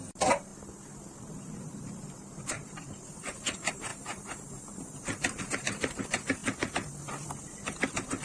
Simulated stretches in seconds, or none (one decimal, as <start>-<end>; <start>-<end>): 0.0-0.5; 1.4-6.4